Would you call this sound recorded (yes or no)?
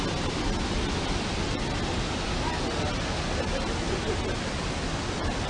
yes